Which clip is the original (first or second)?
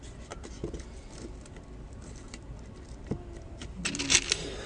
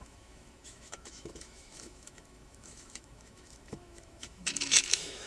first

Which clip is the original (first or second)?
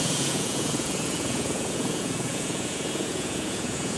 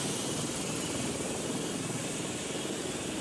second